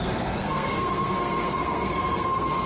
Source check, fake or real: fake